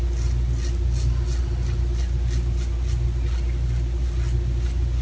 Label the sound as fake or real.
real